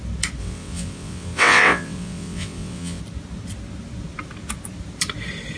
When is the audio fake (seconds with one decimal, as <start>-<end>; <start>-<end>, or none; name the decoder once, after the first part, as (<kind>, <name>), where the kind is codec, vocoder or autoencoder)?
0.4-3.0 (vocoder, WaveNeXt)